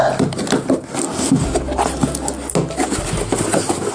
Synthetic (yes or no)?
no